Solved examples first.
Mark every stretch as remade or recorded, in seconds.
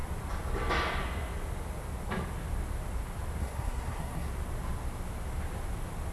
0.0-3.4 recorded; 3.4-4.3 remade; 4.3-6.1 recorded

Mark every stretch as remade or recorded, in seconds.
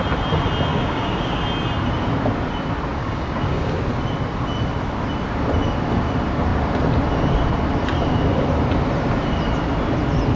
0.0-0.7 recorded; 0.7-1.4 remade; 1.4-3.0 recorded; 3.0-3.8 remade; 3.8-10.4 recorded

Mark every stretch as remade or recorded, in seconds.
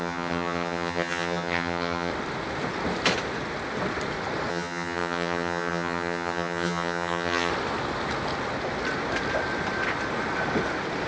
0.0-2.1 remade; 2.1-4.5 recorded; 4.5-7.5 remade; 7.5-11.1 recorded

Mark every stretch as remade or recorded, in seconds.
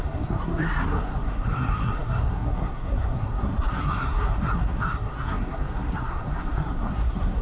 0.0-7.4 remade